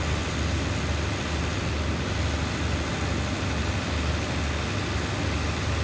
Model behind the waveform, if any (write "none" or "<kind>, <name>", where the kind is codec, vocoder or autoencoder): none